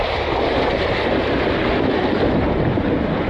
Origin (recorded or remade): recorded